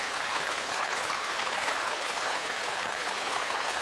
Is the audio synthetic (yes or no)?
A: yes